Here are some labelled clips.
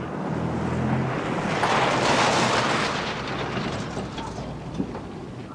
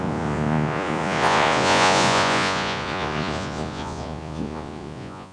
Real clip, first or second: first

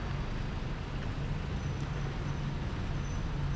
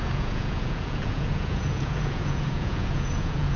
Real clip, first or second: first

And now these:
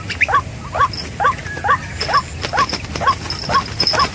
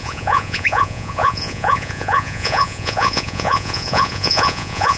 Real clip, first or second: first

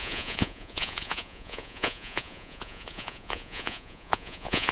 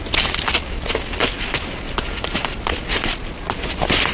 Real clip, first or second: second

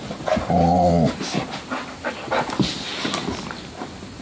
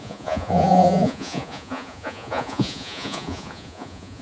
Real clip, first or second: first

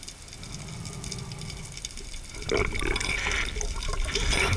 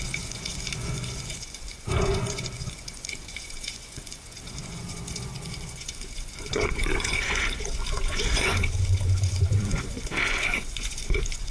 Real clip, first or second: first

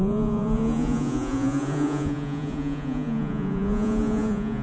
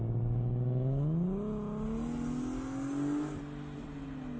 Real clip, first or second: second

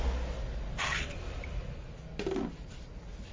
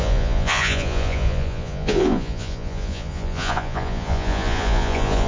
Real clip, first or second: first